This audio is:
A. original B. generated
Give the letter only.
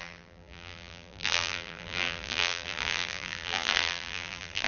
B